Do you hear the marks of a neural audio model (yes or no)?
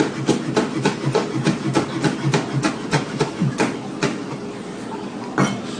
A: no